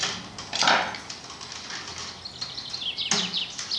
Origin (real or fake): real